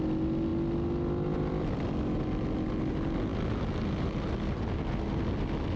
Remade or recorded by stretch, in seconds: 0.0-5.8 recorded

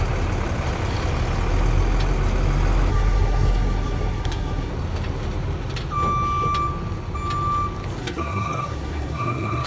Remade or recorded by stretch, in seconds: 0.0-2.9 recorded; 2.9-4.7 remade; 4.7-8.0 recorded; 8.0-9.7 remade